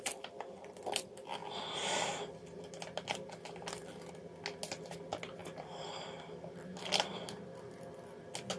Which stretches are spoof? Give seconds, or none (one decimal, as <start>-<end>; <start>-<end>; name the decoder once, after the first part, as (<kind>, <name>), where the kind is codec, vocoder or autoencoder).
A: none